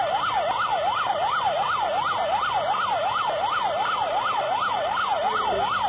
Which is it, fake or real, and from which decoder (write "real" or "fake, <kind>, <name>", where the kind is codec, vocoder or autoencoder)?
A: real